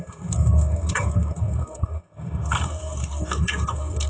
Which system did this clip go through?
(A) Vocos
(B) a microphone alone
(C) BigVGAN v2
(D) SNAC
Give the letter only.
D